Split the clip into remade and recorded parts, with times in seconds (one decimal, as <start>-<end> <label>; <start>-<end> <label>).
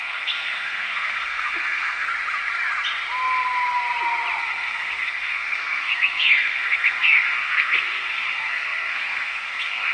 0.0-2.1 remade; 2.1-4.4 recorded; 4.4-9.9 remade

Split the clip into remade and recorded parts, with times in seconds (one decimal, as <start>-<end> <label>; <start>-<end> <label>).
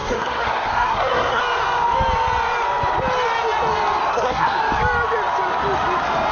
0.0-1.4 remade; 1.4-4.1 recorded; 4.1-4.6 remade; 4.6-6.3 recorded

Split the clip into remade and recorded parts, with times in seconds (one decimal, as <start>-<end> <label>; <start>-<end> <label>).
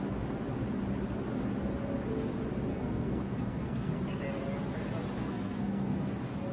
0.0-2.7 recorded; 2.7-4.0 remade; 4.0-5.2 recorded; 5.2-6.1 remade; 6.1-6.5 recorded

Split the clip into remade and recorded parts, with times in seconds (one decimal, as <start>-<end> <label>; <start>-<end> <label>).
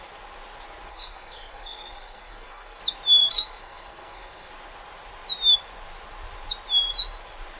0.0-0.9 recorded; 0.9-2.8 remade; 2.8-3.2 recorded; 3.2-4.5 remade; 4.5-7.6 recorded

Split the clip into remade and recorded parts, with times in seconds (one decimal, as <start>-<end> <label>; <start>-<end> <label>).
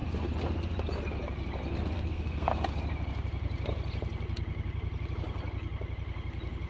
0.0-1.9 recorded; 1.9-2.5 remade; 2.5-6.7 recorded